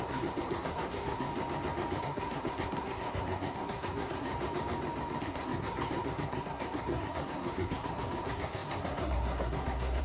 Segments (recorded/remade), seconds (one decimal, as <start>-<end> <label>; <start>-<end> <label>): 0.0-1.3 remade; 1.3-2.0 recorded; 2.0-4.3 remade; 4.3-5.2 recorded; 5.2-10.0 remade